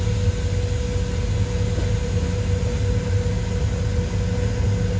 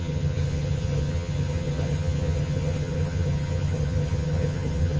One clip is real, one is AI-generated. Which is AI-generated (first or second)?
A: second